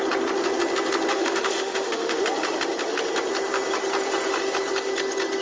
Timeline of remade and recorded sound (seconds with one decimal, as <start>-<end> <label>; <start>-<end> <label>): 0.0-1.1 recorded; 1.1-2.2 remade; 2.2-5.4 recorded